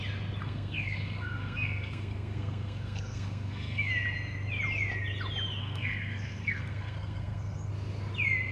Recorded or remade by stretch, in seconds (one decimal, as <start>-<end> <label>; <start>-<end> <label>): 0.0-0.4 recorded; 0.4-3.9 remade; 3.9-5.6 recorded; 5.6-7.7 remade; 7.7-8.5 recorded